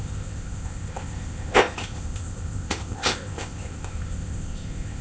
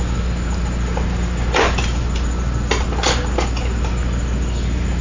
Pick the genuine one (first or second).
second